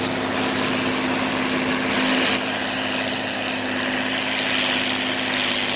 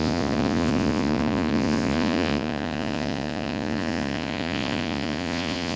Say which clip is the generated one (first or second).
second